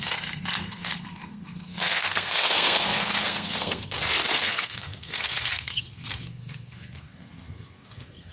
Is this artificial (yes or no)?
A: yes